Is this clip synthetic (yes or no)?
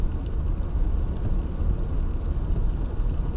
no